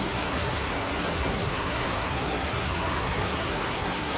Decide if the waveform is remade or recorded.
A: remade